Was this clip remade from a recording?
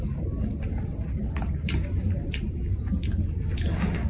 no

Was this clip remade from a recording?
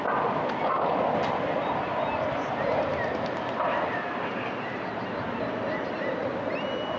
no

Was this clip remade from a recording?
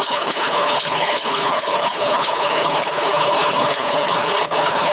yes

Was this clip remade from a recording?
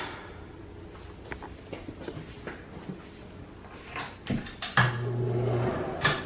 no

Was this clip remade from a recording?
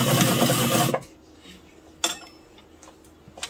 no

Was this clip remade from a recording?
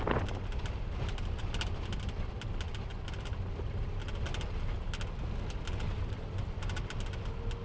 no